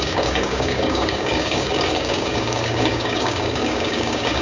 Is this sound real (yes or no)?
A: no